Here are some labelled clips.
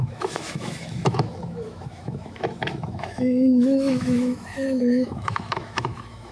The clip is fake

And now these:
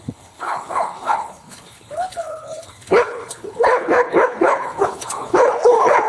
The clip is fake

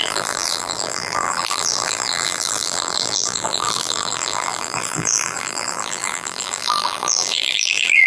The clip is fake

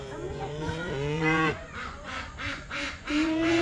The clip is fake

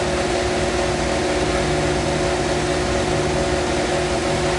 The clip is real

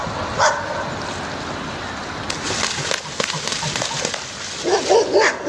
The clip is real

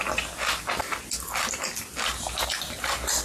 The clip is real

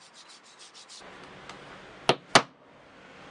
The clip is real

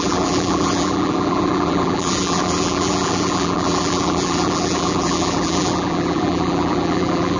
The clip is fake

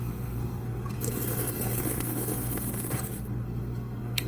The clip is fake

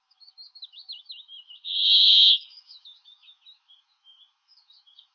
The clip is fake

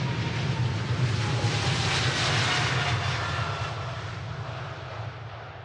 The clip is real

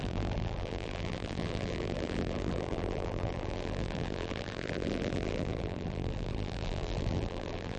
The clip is fake